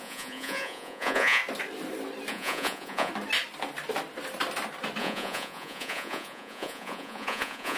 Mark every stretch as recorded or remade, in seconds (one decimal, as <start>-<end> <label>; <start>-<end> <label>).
0.0-1.4 remade; 1.4-2.3 recorded; 2.3-3.1 remade; 3.1-5.0 recorded; 5.0-7.8 remade